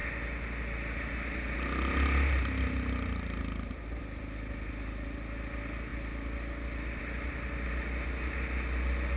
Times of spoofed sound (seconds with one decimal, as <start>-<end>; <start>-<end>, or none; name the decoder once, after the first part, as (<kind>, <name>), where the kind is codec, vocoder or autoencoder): none